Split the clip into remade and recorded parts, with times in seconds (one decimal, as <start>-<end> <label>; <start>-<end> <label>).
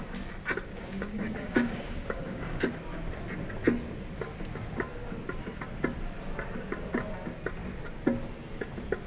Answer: 0.0-0.7 recorded; 0.7-2.7 remade; 2.7-9.1 recorded